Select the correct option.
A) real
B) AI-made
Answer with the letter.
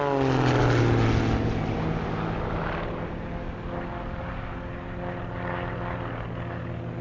A